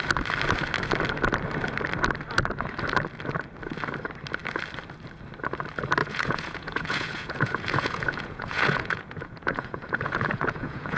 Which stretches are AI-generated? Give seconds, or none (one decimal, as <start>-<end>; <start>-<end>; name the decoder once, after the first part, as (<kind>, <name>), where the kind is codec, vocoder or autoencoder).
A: 6.0-11.0 (vocoder, Vocos)